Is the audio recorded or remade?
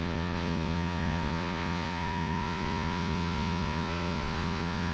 remade